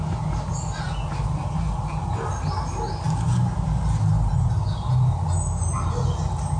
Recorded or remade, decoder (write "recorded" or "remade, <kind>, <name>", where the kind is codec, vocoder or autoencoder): recorded